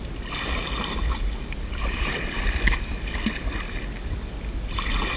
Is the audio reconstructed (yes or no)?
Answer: no